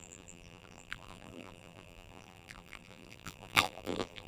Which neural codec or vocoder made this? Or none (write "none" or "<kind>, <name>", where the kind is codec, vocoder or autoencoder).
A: vocoder, BigVGAN v2